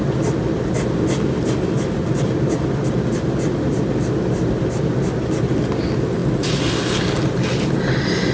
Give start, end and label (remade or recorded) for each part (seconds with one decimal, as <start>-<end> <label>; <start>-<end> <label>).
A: 0.0-8.3 recorded